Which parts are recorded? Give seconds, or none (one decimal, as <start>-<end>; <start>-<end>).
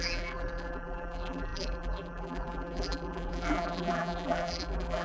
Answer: none